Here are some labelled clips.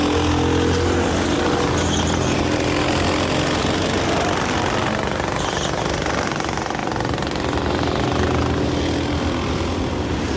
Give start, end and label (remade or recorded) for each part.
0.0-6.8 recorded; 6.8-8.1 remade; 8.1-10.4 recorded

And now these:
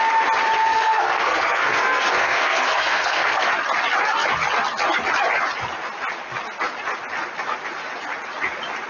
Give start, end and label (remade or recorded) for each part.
0.0-0.6 recorded; 0.6-3.5 remade; 3.5-8.9 recorded